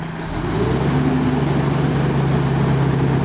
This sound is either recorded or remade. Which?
recorded